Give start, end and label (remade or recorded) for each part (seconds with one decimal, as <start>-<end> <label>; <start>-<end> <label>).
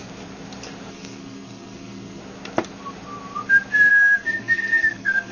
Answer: 0.0-0.9 recorded; 0.9-2.2 remade; 2.2-3.9 recorded; 3.9-5.3 remade